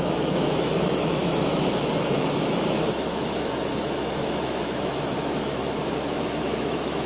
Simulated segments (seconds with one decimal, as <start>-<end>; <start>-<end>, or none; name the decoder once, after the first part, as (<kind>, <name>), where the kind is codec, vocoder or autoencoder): 0.0-7.1 (autoencoder, DAC-VAE)